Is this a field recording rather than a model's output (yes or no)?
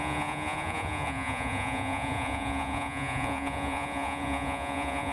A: no